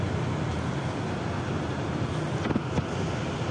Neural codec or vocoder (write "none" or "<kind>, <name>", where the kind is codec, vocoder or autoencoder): none